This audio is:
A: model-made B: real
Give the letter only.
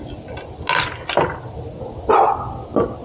B